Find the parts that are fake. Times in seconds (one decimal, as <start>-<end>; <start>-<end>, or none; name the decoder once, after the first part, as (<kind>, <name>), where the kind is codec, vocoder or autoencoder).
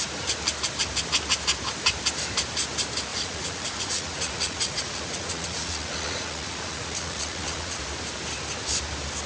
3.1-7.8 (vocoder, Vocos)